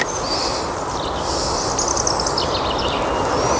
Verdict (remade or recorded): recorded